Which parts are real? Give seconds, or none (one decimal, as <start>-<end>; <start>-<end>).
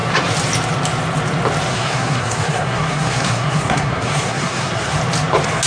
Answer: 0.0-1.7; 5.0-5.7